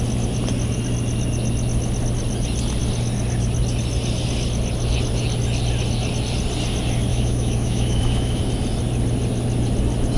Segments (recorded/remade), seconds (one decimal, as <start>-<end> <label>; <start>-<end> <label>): 0.0-7.1 recorded; 7.1-8.4 remade; 8.4-10.2 recorded